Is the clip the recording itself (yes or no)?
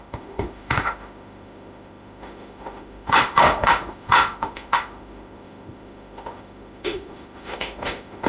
no